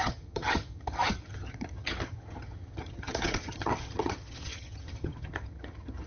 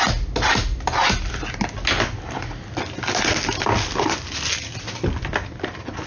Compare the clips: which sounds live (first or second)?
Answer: second